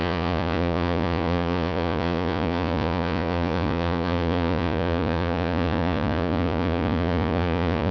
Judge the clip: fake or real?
fake